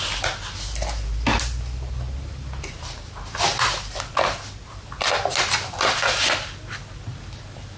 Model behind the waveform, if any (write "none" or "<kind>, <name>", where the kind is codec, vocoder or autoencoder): none